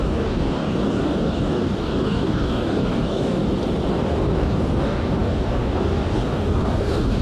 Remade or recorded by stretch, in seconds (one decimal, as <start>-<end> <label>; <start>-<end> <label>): 0.0-3.4 remade; 3.4-3.9 recorded; 3.9-7.2 remade